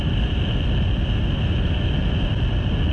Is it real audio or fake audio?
real